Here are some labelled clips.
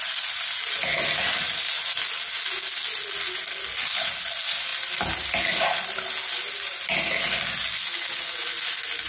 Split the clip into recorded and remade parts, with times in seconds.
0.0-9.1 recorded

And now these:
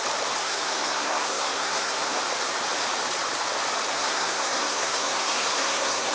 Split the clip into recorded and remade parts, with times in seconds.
0.0-0.4 recorded; 0.4-2.2 remade; 2.2-3.9 recorded; 3.9-6.1 remade

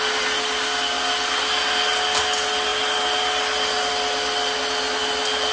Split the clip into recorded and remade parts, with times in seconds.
0.0-5.5 recorded

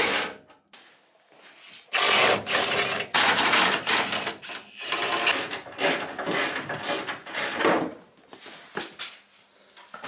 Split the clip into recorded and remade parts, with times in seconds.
0.0-3.1 recorded; 3.1-3.6 remade; 3.6-10.1 recorded

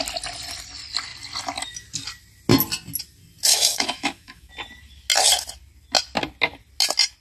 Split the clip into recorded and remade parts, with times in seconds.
0.0-3.5 recorded; 3.5-4.5 remade; 4.5-7.2 recorded

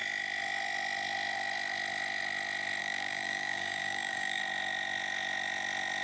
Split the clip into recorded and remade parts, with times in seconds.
0.0-2.8 recorded; 2.8-4.4 remade; 4.4-6.0 recorded